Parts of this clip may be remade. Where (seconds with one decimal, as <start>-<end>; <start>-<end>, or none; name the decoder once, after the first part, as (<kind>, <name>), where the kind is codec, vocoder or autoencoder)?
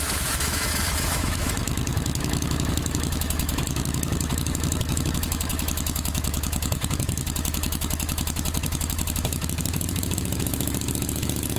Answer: 0.0-11.6 (autoencoder, DAC-VAE)